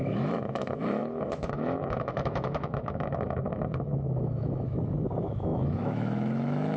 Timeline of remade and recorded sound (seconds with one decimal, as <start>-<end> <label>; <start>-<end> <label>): 0.0-6.8 remade